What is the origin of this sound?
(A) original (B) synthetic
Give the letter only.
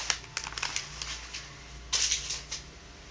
A